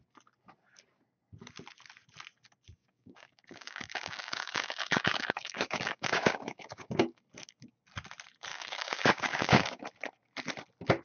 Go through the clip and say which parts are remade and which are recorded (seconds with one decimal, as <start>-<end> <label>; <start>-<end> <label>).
0.0-2.8 recorded; 2.8-7.2 remade; 7.2-8.5 recorded; 8.5-9.8 remade; 9.8-11.0 recorded